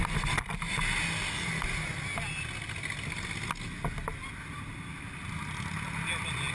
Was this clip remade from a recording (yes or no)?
no